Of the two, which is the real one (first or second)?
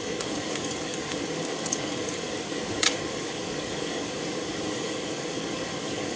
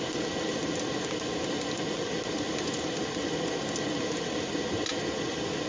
second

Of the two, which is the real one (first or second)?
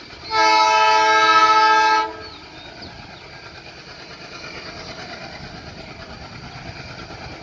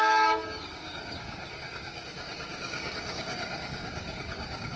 first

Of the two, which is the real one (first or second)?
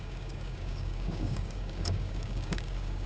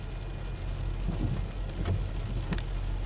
second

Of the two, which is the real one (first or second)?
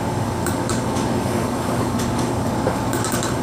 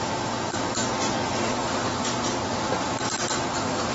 second